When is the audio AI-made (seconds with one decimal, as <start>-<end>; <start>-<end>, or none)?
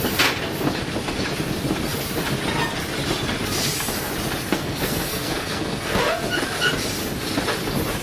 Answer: 4.5-6.0